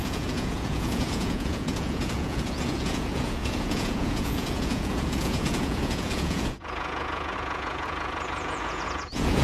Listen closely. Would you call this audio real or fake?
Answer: fake